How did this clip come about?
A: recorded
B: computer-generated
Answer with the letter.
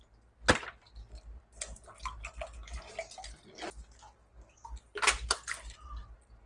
A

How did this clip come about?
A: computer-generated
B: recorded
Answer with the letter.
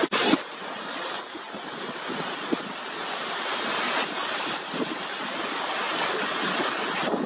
B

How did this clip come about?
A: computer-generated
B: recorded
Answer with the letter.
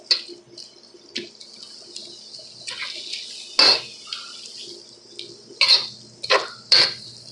B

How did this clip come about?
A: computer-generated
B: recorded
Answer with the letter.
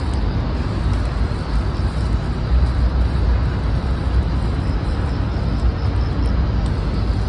B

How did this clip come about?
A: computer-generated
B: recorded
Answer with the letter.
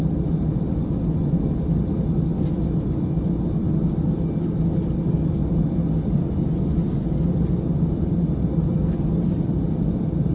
B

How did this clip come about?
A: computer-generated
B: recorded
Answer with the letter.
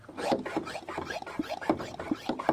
B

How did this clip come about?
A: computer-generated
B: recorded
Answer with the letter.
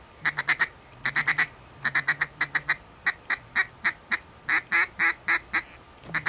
B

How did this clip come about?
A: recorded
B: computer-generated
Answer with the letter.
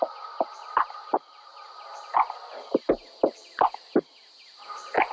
A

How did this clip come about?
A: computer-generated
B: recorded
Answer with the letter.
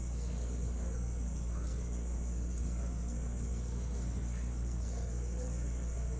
A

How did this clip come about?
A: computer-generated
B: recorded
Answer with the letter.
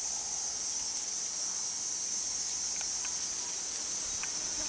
B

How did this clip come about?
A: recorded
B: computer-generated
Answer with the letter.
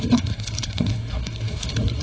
B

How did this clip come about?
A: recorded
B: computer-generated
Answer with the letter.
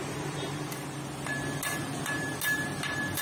A